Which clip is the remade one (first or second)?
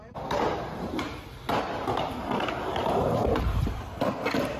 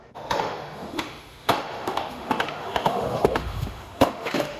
second